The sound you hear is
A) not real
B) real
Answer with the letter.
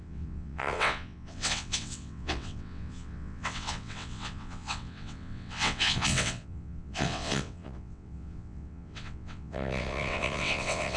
A